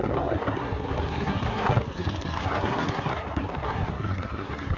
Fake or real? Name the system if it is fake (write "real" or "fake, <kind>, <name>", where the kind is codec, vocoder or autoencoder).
fake, codec, SNAC